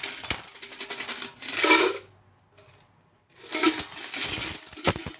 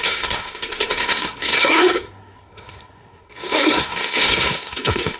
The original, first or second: first